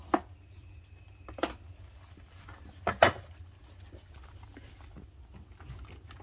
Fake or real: real